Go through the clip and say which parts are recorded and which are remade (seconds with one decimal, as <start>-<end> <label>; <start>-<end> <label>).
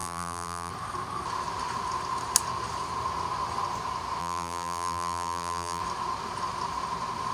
0.0-0.7 remade; 0.7-4.2 recorded; 4.2-5.8 remade; 5.8-7.3 recorded